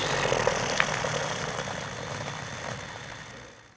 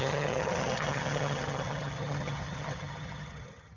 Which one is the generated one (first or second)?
second